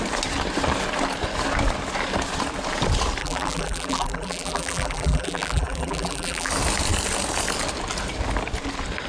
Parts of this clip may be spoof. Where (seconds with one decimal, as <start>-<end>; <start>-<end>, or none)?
3.2-6.5